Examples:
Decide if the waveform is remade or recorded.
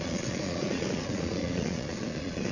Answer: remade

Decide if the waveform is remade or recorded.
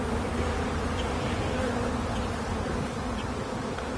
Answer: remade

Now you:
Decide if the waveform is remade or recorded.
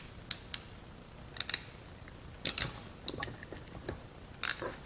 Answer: recorded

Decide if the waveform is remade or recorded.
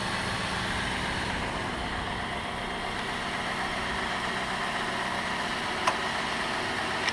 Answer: recorded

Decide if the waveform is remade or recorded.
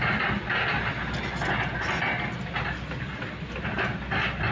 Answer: recorded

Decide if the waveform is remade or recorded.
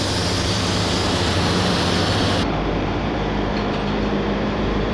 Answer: remade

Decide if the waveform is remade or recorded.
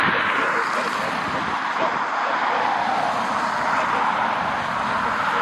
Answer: remade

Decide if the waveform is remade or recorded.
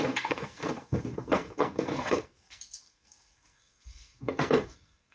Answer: remade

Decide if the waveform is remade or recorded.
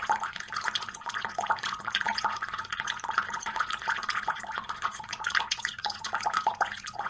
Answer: remade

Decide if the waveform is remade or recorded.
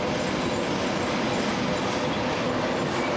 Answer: recorded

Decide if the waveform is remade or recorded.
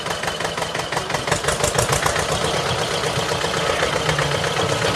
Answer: recorded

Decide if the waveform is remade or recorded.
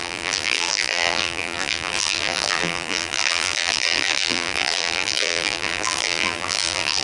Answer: remade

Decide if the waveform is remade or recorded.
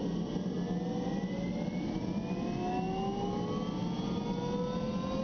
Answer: recorded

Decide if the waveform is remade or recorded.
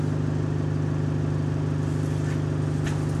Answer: recorded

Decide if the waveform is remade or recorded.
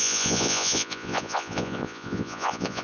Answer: remade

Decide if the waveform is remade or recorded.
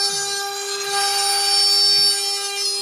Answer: recorded